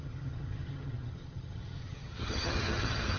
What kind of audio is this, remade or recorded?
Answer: remade